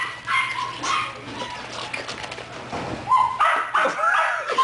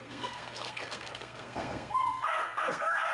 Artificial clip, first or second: second